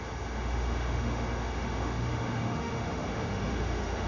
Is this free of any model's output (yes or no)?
no